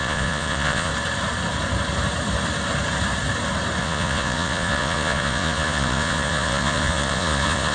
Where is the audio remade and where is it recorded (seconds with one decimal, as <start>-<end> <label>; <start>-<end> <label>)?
0.0-0.9 remade; 0.9-3.8 recorded; 3.8-7.7 remade